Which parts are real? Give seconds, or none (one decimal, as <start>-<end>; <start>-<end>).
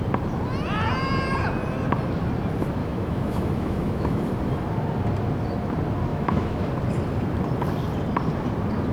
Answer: 0.0-2.8; 4.2-6.1; 6.7-8.9